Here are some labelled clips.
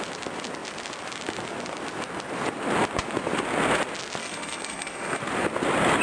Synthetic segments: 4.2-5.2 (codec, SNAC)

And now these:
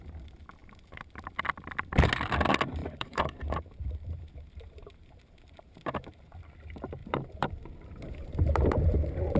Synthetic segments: 0.6-1.4 (vocoder, BigVGAN v2); 2.8-6.5; 7.0-9.4